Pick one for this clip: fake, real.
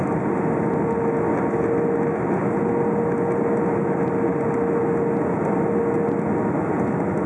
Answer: real